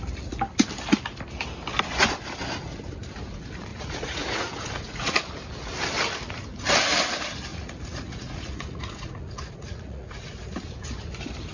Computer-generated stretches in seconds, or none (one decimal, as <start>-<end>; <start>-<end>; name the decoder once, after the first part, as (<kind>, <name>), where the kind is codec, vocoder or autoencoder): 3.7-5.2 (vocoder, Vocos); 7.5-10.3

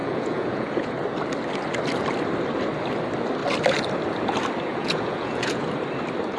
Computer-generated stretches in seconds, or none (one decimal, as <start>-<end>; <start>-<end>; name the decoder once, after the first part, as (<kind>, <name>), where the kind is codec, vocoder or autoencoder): 0.0-0.9 (vocoder, Vocos); 4.7-5.7

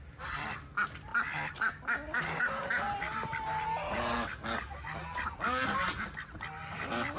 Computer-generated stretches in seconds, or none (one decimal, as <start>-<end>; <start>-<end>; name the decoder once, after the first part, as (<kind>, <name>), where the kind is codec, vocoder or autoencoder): none